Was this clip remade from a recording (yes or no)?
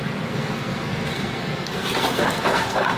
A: yes